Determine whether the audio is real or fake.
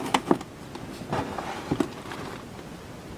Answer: real